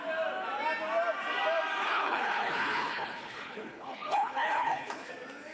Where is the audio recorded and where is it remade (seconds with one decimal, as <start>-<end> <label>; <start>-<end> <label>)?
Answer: 0.0-1.8 recorded; 1.8-5.1 remade; 5.1-5.5 recorded

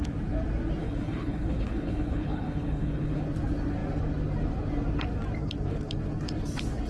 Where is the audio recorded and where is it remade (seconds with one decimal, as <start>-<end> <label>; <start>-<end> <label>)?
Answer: 0.0-0.8 recorded; 0.8-3.2 remade; 3.2-6.9 recorded

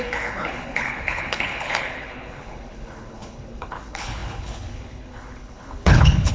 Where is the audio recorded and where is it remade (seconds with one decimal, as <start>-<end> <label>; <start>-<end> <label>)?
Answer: 0.0-6.3 remade

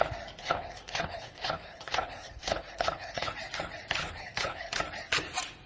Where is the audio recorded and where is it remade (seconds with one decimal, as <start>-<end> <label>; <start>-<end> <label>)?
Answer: 0.0-0.4 recorded; 0.4-3.3 remade; 3.3-4.0 recorded; 4.0-4.7 remade; 4.7-5.7 recorded

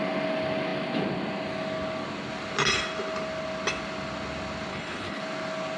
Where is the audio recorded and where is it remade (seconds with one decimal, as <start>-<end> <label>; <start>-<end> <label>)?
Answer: 0.0-4.7 recorded; 4.7-5.2 remade; 5.2-5.8 recorded

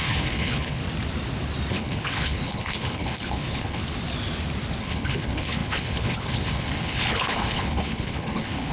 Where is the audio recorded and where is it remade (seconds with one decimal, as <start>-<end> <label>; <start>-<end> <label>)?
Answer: 0.0-0.8 remade; 0.8-1.7 recorded; 1.7-3.8 remade; 3.8-4.8 recorded; 4.8-8.7 remade

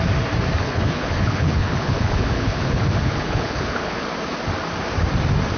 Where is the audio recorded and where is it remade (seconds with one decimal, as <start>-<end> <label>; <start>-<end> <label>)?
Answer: 0.0-0.6 recorded; 0.6-4.0 remade; 4.0-5.6 recorded